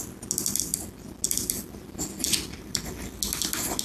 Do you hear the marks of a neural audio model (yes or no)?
no